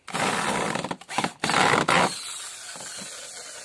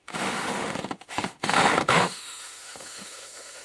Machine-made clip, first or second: second